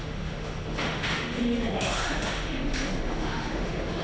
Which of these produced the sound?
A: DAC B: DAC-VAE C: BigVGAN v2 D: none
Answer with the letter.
B